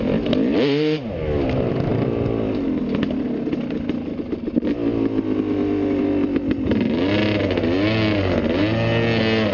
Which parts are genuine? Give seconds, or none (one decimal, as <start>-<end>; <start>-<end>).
0.0-9.5